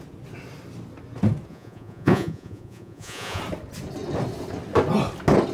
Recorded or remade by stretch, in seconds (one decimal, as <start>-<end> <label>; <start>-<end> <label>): 0.0-1.5 recorded; 1.5-3.4 remade; 3.4-5.5 recorded